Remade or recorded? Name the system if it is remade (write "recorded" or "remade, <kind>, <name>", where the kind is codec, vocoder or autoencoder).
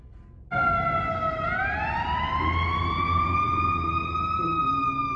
recorded